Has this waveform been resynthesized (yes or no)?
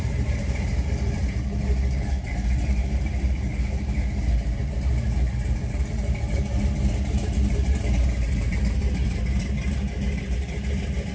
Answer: yes